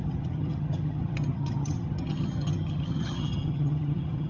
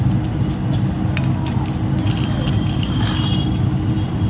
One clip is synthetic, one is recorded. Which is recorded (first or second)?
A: second